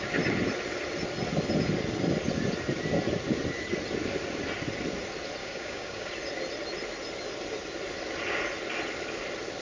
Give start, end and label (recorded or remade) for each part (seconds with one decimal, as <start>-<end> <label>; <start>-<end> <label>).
0.0-5.4 recorded; 5.4-6.1 remade; 6.1-9.6 recorded

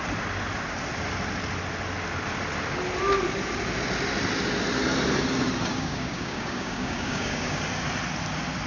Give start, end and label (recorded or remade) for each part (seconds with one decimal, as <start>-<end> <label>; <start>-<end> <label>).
0.0-5.7 recorded; 5.7-7.6 remade; 7.6-8.7 recorded

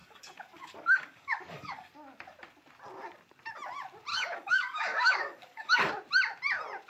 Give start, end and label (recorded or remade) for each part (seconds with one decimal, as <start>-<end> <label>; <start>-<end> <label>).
0.0-1.9 remade; 1.9-4.1 recorded; 4.1-5.9 remade; 5.9-6.9 recorded

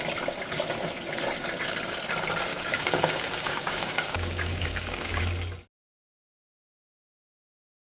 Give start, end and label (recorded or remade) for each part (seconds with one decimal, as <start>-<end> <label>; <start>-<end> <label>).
0.0-2.5 recorded; 2.5-5.2 remade; 5.2-8.0 recorded

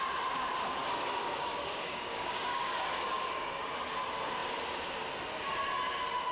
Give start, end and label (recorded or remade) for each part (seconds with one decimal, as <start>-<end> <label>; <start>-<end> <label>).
0.0-0.8 recorded; 0.8-3.8 remade; 3.8-6.3 recorded

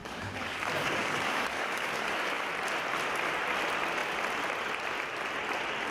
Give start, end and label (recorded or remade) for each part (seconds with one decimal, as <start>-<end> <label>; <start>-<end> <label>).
0.0-2.5 remade; 2.5-5.9 recorded

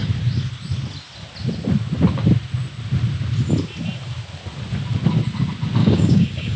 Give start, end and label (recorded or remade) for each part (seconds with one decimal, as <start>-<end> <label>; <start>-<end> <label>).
0.0-5.8 recorded; 5.8-6.6 remade